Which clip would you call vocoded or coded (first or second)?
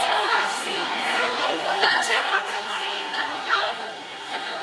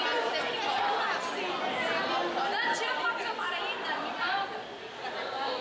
first